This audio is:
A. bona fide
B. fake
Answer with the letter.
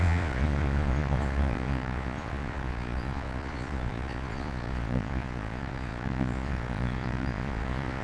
B